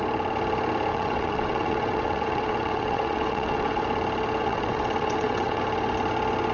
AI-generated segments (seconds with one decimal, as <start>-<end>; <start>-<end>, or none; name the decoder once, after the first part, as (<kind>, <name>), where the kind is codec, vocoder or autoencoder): 0.9-3.8 (vocoder, WaveNeXt); 4.4-5.6

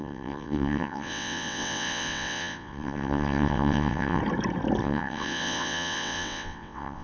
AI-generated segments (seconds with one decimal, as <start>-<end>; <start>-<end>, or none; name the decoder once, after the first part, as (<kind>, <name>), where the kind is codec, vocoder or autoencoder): 0.0-4.2 (vocoder, WaveNeXt); 4.8-7.0

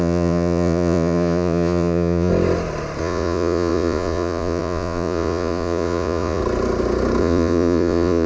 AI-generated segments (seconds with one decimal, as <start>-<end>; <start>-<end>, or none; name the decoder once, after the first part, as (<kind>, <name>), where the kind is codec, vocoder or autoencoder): 0.0-2.3 (vocoder, Vocos); 3.0-6.4; 7.2-8.3

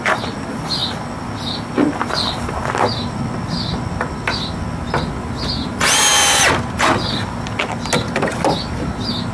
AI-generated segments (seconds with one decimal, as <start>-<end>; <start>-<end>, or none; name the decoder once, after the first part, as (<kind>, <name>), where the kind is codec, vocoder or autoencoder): none

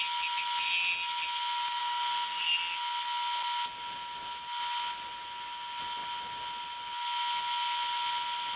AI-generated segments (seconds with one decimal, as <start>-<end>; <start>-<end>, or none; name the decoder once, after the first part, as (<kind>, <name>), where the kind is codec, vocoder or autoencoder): 1.8-2.4 (autoencoder, DAC-VAE)

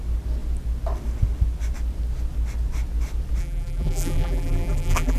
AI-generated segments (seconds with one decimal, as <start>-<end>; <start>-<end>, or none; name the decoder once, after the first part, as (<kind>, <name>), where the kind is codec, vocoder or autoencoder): 3.4-5.2 (vocoder, BigVGAN v2)